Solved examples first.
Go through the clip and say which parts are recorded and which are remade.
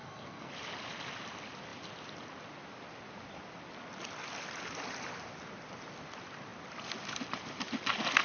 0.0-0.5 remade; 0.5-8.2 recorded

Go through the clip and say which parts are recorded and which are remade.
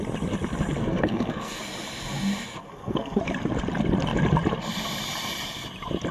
0.0-0.8 recorded; 0.8-1.6 remade; 1.6-2.6 recorded; 2.6-3.2 remade; 3.2-6.1 recorded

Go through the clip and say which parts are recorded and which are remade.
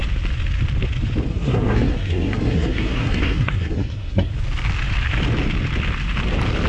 0.0-1.3 recorded; 1.3-4.3 remade; 4.3-6.7 recorded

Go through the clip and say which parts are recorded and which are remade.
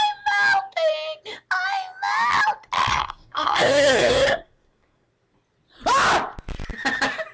0.0-2.9 recorded; 2.9-5.1 remade; 5.1-7.3 recorded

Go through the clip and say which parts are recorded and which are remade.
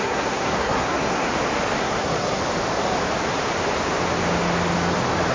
0.0-1.3 remade; 1.3-1.8 recorded; 1.8-2.4 remade; 2.4-5.3 recorded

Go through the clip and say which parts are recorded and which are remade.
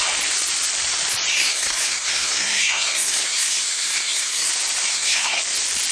0.0-1.3 recorded; 1.3-4.5 remade; 4.5-4.9 recorded; 4.9-5.4 remade; 5.4-5.9 recorded